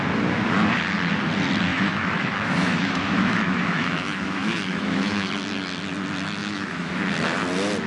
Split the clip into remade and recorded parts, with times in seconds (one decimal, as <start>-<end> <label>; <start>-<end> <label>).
0.0-1.7 recorded; 1.7-5.3 remade; 5.3-6.4 recorded; 6.4-7.0 remade; 7.0-7.9 recorded